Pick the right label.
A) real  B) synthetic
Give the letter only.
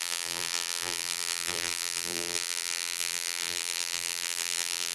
B